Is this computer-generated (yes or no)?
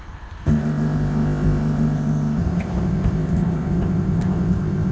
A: yes